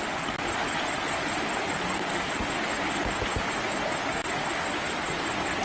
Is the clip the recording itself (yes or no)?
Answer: yes